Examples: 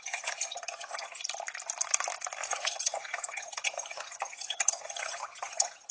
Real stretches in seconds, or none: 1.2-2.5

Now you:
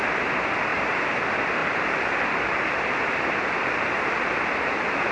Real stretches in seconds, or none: 0.0-0.7; 1.2-5.1

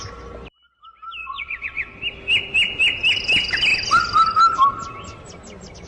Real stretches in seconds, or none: 0.0-1.2; 1.9-5.9

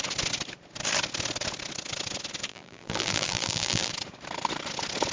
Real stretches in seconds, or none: 0.0-2.5; 3.9-5.1

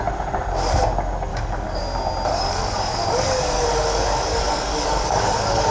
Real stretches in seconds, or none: 0.0-1.3; 1.8-2.3

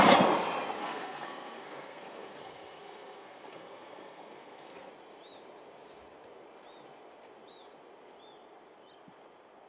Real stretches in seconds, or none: 0.0-0.8; 4.9-9.7